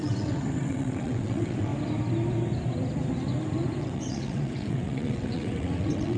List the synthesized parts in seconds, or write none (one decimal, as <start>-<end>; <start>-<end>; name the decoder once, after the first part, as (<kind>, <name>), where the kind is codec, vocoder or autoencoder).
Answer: 0.0-1.7 (vocoder, WaveNeXt); 3.8-6.2